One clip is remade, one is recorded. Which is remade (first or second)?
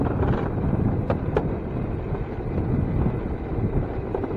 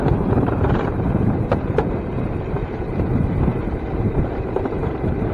second